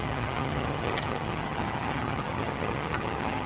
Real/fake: fake